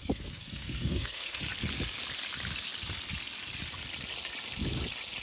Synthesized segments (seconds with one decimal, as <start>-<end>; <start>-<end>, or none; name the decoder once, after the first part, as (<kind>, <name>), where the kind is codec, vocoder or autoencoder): 0.0-1.4 (codec, SNAC)